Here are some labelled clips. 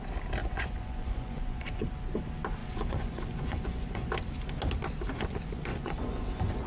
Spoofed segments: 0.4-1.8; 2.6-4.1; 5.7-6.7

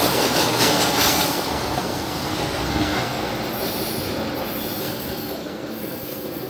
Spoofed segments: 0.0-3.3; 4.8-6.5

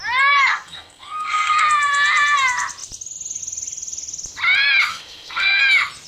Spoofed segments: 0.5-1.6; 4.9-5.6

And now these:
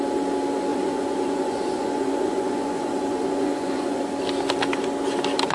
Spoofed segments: 0.7-4.0